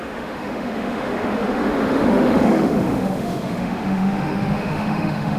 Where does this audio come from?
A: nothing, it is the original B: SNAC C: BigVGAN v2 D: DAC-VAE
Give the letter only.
D